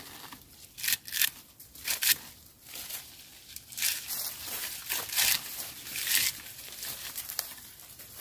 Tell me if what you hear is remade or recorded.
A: recorded